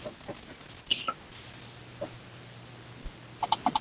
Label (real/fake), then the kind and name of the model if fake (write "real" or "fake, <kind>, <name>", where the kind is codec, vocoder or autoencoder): real